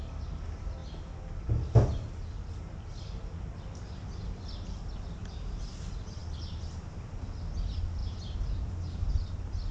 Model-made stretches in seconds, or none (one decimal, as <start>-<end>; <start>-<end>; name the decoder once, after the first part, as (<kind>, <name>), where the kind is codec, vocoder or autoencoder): 8.0-9.1 (vocoder, BigVGAN v2)